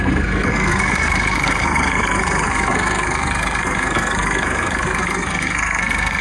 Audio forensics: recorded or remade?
remade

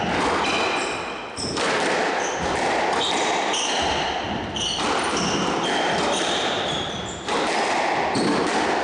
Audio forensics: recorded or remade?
recorded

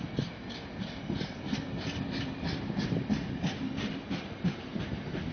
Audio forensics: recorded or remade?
recorded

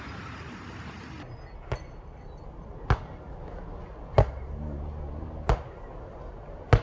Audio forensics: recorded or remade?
recorded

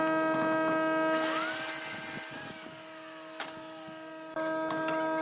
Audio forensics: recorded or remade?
recorded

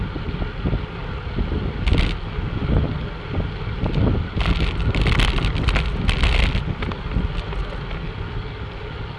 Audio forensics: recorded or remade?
recorded